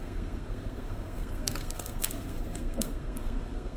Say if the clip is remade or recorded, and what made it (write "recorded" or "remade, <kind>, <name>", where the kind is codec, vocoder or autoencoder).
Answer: remade, codec, SNAC